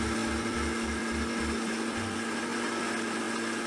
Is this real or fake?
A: real